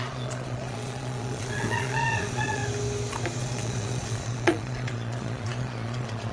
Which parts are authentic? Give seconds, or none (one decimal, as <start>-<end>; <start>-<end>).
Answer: 2.6-3.4